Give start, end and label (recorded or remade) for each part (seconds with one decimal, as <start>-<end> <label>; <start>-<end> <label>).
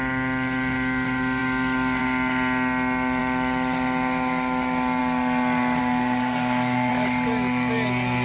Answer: 0.0-5.8 recorded; 5.8-6.9 remade; 6.9-8.2 recorded